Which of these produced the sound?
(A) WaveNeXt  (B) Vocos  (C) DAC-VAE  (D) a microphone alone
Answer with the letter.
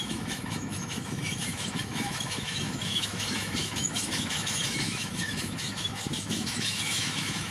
C